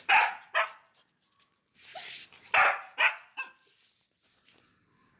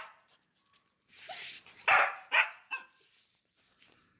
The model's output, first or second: second